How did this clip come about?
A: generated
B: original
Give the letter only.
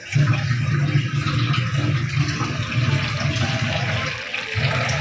B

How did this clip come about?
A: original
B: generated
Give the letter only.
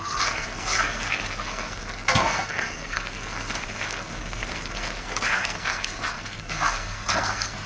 B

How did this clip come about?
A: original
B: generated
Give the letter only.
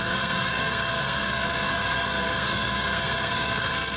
B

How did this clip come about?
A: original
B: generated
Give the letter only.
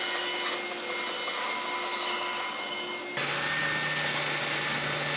A